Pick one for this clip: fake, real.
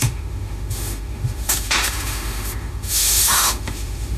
fake